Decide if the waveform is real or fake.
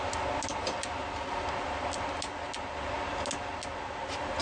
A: real